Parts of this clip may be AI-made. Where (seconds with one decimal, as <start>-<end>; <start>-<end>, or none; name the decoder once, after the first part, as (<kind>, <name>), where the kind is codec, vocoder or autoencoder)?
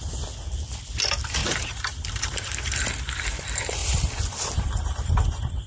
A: 1.4-2.7 (vocoder, BigVGAN v2); 3.8-5.7